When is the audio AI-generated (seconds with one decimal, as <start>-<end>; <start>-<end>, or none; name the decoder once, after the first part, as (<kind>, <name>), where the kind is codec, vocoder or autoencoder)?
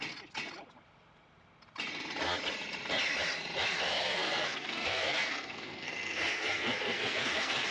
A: 3.9-7.7 (codec, SNAC)